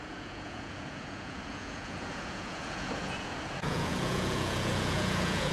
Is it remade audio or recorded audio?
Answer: remade